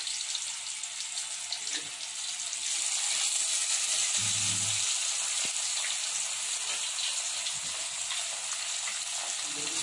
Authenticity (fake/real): real